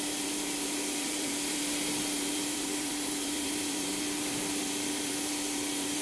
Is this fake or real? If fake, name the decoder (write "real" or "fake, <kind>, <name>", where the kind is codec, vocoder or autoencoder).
fake, vocoder, BigVGAN v2